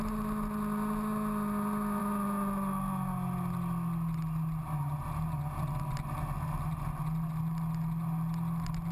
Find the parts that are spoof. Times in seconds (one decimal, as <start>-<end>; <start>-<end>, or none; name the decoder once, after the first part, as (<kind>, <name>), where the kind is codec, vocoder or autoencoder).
none